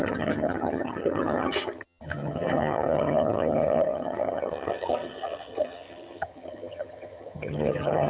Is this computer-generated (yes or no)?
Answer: yes